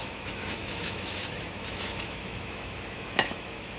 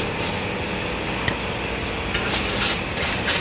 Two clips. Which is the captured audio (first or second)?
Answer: second